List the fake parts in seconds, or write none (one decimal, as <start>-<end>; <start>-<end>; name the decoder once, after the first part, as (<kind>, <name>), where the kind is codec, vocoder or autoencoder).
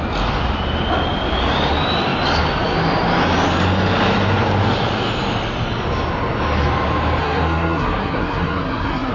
7.2-9.1 (codec, SNAC)